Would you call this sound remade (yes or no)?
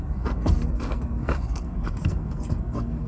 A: yes